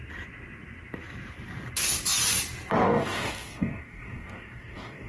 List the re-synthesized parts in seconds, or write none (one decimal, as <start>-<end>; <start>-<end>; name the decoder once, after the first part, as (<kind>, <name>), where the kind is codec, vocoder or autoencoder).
2.8-5.1 (codec, DAC)